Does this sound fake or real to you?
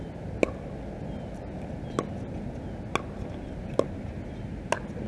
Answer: real